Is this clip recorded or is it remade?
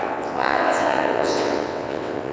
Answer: remade